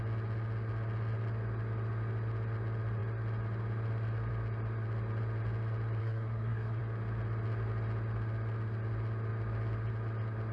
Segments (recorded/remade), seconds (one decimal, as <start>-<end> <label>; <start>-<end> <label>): 0.0-6.0 recorded; 6.0-6.8 remade; 6.8-10.5 recorded